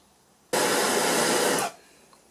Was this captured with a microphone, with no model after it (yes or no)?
yes